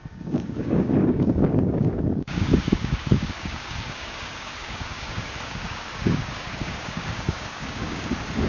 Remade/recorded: remade